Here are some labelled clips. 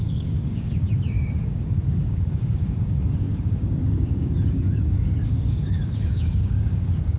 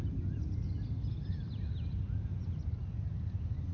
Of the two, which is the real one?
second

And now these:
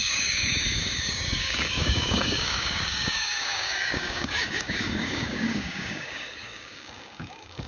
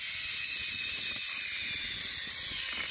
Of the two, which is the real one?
second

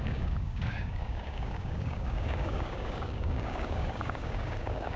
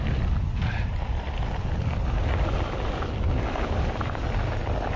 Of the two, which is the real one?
second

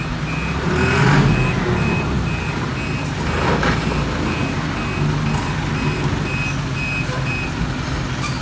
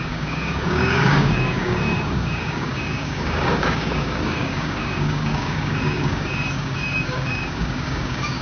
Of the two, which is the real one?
first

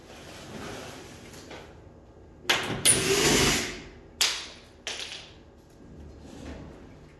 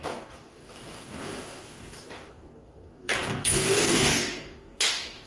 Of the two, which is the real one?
first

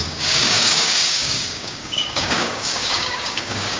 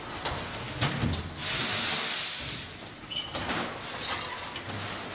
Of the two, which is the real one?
second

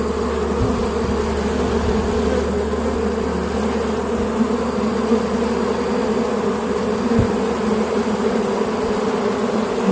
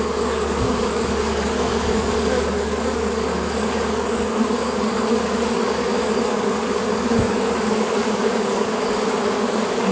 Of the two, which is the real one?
first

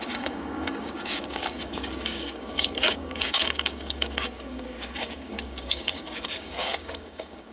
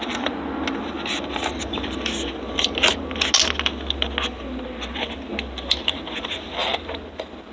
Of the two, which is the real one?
second